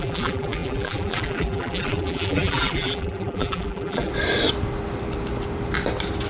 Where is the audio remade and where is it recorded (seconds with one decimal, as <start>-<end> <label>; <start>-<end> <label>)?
0.0-4.1 remade; 4.1-6.3 recorded